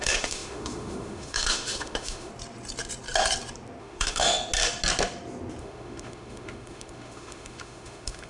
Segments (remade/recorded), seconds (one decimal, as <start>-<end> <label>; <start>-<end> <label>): 0.0-2.3 remade; 2.3-3.8 recorded; 3.8-4.4 remade; 4.4-5.6 recorded; 5.6-8.3 remade